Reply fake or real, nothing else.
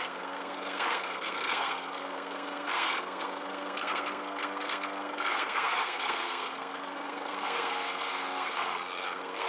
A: fake